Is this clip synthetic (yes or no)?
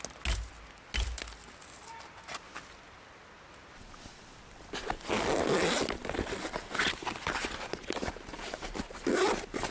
no